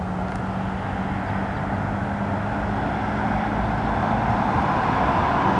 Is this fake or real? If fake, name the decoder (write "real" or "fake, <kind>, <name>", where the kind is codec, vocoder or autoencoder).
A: real